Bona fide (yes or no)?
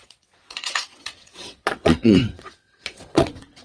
no